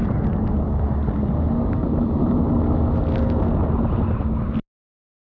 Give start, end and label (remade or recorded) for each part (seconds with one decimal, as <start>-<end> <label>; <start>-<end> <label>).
0.0-2.2 remade; 2.2-5.3 recorded